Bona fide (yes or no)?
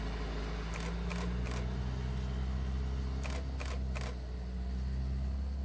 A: yes